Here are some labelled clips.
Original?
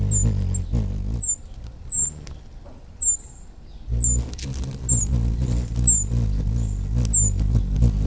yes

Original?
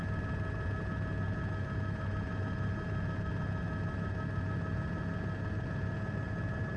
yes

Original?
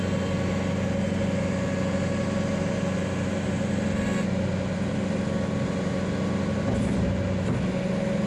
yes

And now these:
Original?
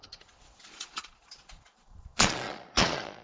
no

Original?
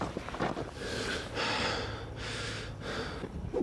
yes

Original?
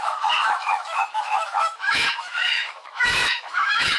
no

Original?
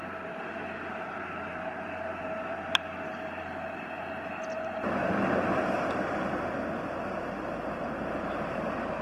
yes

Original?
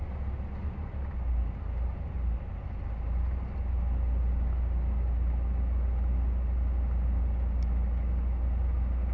yes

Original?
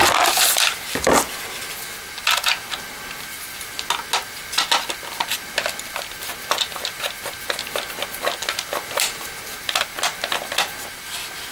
yes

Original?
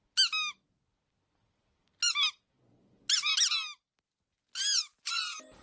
yes